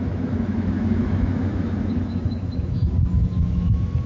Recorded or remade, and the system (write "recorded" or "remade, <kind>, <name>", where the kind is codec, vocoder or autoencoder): remade, autoencoder, DAC-VAE